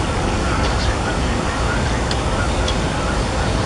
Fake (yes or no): yes